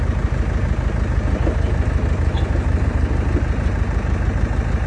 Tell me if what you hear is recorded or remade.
recorded